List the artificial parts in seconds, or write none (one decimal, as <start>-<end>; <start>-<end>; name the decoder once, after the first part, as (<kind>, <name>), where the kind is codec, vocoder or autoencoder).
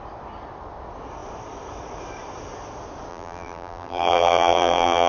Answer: 3.1-5.1 (vocoder, BigVGAN v2)